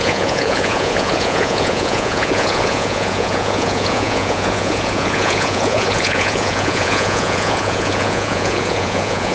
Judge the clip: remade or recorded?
remade